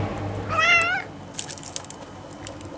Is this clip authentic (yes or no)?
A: yes